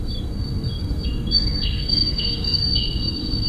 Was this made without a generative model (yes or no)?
no